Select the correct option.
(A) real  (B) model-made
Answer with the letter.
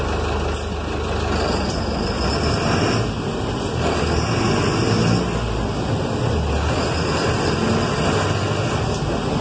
A